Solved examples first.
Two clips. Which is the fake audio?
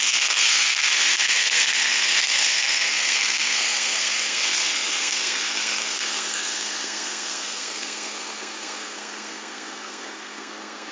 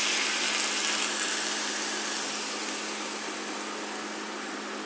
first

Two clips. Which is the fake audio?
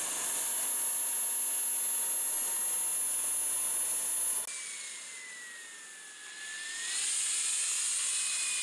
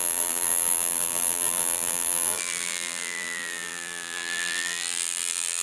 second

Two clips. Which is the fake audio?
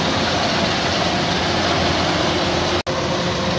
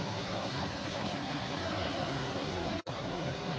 second